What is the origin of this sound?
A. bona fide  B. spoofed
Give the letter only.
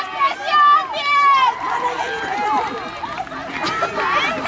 A